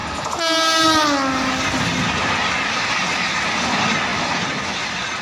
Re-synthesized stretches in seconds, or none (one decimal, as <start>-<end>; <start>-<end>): none